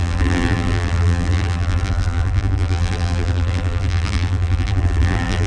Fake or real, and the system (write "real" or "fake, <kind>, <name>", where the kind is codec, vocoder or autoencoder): fake, vocoder, BigVGAN v2